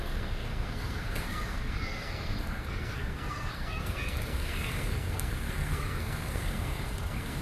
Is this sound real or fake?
fake